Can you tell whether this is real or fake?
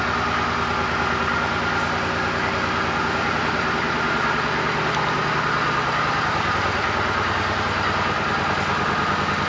real